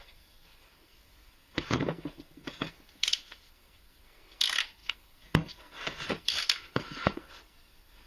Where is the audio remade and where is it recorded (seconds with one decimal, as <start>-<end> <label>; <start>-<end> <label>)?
0.0-8.1 remade